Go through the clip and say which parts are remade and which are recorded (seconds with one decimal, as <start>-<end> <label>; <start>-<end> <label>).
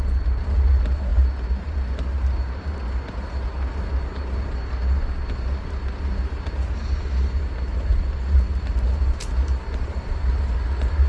0.0-11.1 recorded